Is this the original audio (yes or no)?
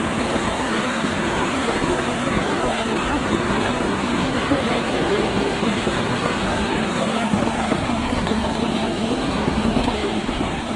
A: no